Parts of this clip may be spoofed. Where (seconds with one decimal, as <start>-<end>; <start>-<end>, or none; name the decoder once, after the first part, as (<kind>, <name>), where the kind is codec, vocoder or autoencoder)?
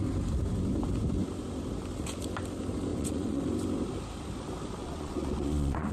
2.9-3.4 (vocoder, Vocos); 4.8-5.9